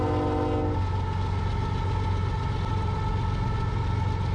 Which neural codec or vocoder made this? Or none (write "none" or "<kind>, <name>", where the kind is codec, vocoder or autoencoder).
none